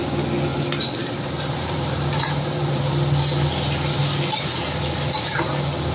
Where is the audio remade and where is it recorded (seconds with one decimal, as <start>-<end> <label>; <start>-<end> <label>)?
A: 0.0-0.5 recorded; 0.5-2.9 remade; 2.9-5.9 recorded